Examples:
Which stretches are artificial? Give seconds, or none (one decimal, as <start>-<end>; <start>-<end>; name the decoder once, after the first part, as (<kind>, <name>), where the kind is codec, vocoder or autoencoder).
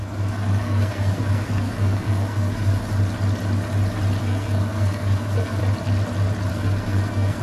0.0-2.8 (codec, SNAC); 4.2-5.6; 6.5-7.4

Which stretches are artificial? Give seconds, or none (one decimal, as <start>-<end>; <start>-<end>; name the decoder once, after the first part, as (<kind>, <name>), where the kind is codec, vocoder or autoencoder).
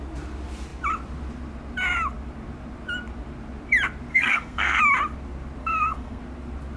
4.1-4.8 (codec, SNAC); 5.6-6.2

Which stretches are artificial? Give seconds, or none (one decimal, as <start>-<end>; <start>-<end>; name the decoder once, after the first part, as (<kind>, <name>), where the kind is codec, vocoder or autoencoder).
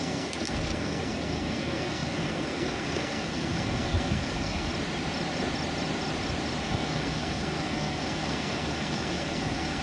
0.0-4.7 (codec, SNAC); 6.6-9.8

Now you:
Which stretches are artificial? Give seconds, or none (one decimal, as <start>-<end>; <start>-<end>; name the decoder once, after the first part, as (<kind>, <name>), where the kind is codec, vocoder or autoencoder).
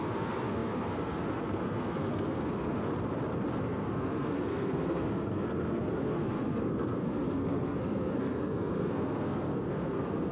0.0-2.9 (codec, SNAC); 3.6-10.3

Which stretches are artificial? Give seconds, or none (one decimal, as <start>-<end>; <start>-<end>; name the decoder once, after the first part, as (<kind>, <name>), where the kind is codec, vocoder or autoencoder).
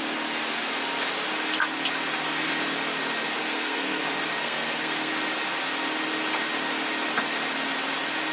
3.4-4.0 (codec, SNAC); 4.4-5.1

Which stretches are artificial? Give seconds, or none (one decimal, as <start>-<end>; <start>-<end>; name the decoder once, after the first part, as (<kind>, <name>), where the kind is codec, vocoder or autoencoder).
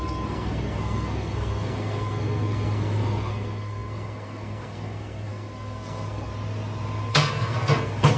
0.0-6.3 (codec, SNAC); 7.1-8.2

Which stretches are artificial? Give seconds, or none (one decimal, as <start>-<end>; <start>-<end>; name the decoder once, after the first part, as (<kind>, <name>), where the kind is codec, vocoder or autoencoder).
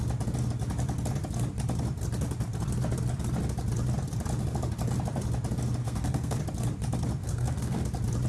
5.8-6.4 (codec, SNAC); 7.2-7.8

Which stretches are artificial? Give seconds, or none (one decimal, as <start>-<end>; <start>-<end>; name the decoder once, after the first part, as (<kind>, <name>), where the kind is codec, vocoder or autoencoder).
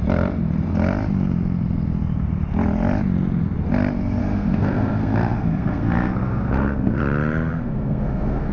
4.2-7.0 (codec, SNAC); 7.5-8.5